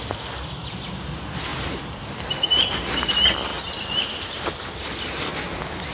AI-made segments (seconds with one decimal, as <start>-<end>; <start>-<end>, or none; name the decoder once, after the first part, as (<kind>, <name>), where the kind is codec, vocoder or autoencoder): 1.5-2.2 (vocoder, BigVGAN v2); 3.5-4.5